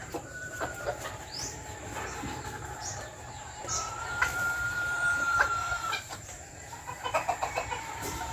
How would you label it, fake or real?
fake